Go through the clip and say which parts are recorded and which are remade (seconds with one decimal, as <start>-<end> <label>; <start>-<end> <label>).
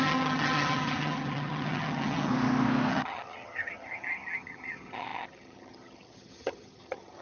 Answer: 0.0-2.3 remade; 2.3-2.9 recorded; 2.9-7.2 remade